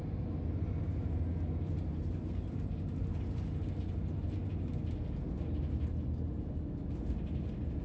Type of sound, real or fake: real